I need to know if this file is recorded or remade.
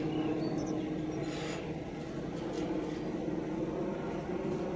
recorded